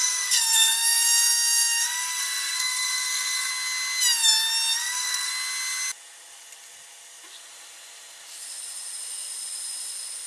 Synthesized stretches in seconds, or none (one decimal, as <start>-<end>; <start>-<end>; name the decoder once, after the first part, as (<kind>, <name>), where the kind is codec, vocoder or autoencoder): 0.0-3.5 (codec, SNAC); 4.8-5.3